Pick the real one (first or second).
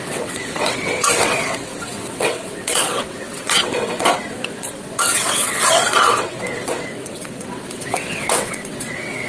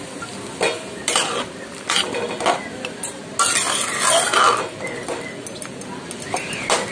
second